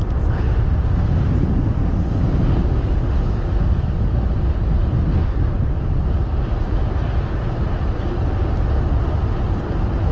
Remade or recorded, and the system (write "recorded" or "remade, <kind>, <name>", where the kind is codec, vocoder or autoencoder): recorded